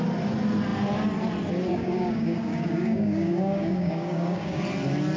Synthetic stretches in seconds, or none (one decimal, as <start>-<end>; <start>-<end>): 1.7-4.6